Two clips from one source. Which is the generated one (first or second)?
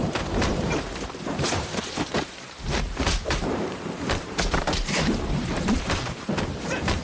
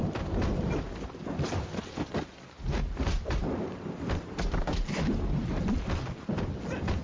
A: first